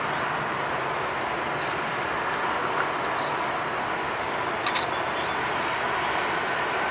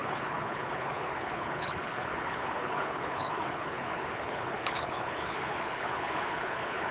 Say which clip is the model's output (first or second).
second